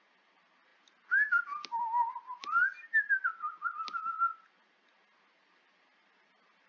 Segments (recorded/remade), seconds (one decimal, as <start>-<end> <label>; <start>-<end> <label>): 0.0-6.7 recorded